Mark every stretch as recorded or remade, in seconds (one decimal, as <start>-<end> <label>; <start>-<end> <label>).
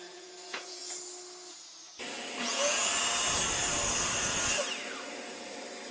0.0-0.8 remade; 0.8-2.4 recorded; 2.4-2.9 remade; 2.9-5.9 recorded